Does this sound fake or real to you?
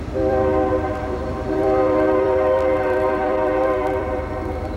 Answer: fake